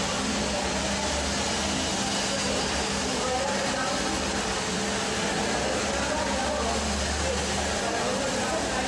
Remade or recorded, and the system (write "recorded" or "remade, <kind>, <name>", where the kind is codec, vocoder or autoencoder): recorded